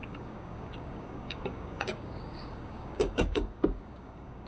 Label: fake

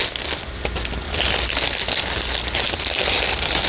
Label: real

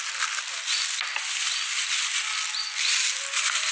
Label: real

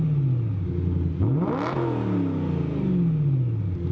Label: real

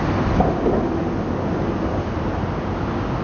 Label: real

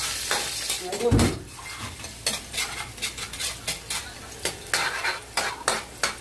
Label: real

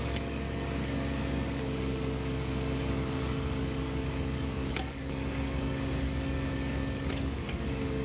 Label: fake